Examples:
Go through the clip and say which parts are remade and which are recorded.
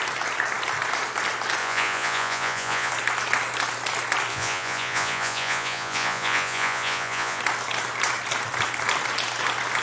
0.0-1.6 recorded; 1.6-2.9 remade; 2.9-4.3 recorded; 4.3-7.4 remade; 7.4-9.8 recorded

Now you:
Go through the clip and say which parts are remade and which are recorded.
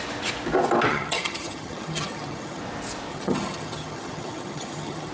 0.0-0.9 recorded; 0.9-2.6 remade; 2.6-3.1 recorded; 3.1-5.1 remade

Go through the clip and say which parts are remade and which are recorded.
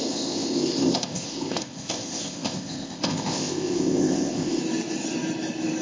0.0-4.6 remade; 4.6-5.8 recorded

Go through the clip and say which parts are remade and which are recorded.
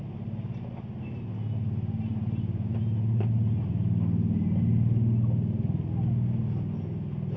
0.0-2.1 recorded; 2.1-3.7 remade; 3.7-7.4 recorded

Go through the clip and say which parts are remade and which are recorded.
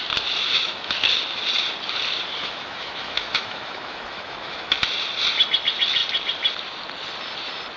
0.0-0.4 recorded; 0.4-1.2 remade; 1.2-2.4 recorded; 2.4-4.8 remade; 4.8-7.8 recorded